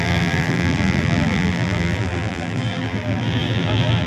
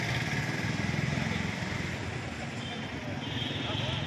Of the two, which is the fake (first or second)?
first